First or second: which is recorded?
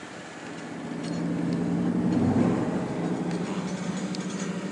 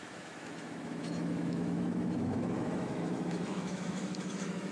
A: first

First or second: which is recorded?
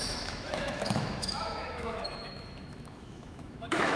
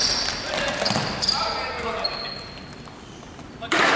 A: second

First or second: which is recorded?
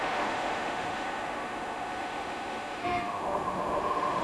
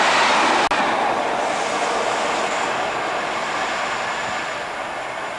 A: second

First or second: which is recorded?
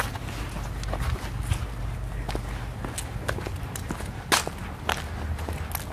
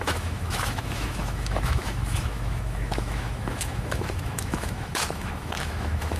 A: first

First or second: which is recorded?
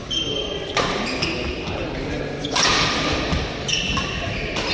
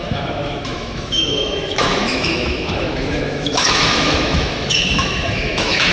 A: first